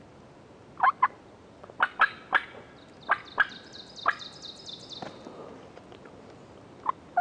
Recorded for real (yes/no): yes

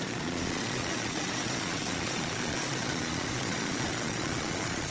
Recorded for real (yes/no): no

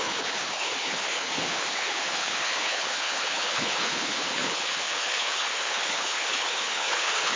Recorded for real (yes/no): no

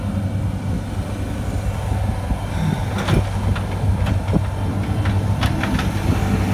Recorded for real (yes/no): yes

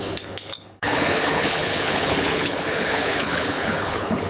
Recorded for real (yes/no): no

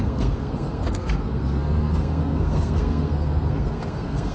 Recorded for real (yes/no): no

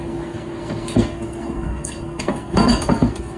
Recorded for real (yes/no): no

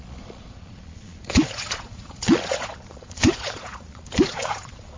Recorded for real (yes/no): no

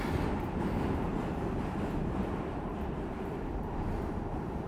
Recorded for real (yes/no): no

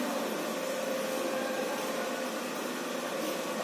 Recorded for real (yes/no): yes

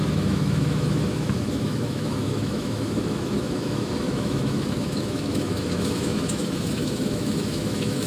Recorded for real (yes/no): no